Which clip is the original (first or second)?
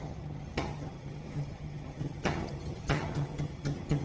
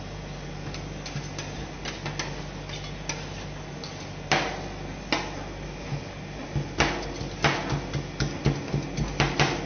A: second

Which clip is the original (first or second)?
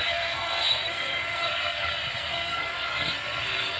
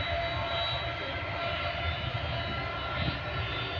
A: second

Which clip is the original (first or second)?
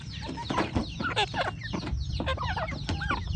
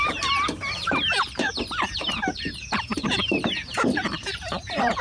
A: first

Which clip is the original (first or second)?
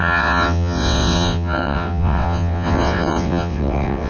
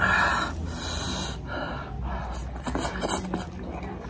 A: second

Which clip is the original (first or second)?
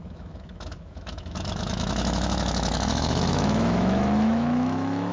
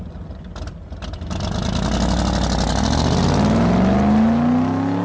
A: second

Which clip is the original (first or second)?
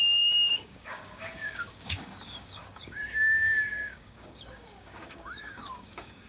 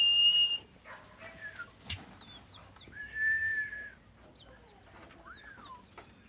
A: second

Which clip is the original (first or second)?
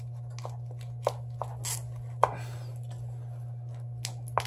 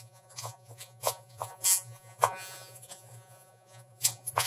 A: first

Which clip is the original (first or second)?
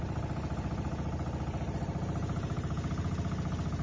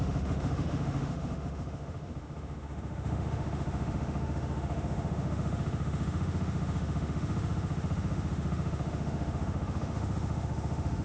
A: first